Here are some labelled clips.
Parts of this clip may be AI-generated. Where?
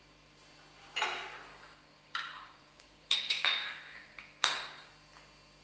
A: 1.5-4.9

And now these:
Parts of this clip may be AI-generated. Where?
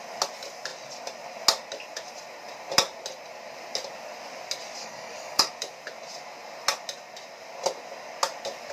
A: 4.8-5.5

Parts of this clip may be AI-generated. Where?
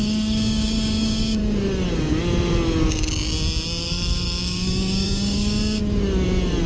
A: 0.0-1.4; 3.8-5.8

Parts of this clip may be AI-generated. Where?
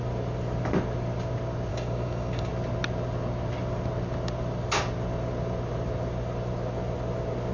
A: 1.7-2.5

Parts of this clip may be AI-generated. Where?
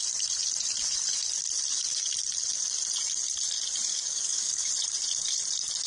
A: 3.9-4.7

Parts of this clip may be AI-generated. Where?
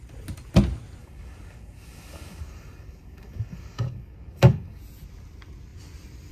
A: 1.0-4.8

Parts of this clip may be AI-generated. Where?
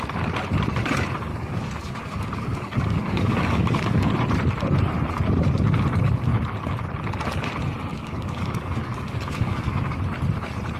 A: 1.3-4.1; 7.9-10.0